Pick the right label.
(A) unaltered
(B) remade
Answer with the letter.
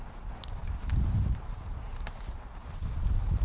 B